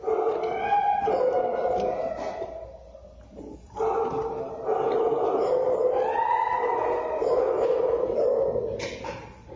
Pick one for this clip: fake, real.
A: real